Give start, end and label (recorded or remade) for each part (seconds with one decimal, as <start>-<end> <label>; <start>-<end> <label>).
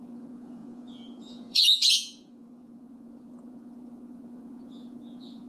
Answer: 0.0-5.5 remade